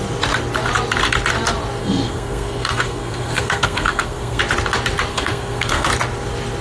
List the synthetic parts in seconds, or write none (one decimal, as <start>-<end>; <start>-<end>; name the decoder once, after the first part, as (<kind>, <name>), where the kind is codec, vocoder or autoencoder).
1.8-4.4 (codec, SNAC); 5.1-5.9